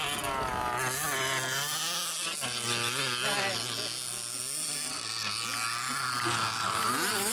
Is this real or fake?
real